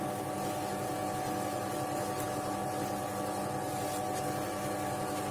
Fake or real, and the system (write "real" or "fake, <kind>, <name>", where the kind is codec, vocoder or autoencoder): real